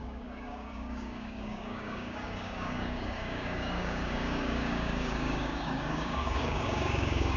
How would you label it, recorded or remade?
remade